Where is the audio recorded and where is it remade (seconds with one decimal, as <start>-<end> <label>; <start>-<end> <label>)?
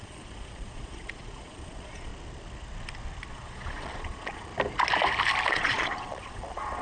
0.0-2.1 remade; 2.1-3.3 recorded; 3.3-4.5 remade; 4.5-5.5 recorded; 5.5-6.8 remade